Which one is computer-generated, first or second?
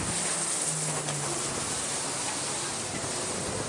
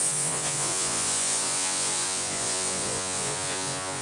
second